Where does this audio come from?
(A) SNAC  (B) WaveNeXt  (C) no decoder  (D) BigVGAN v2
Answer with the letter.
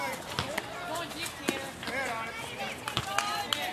C